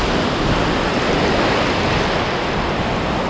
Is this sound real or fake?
real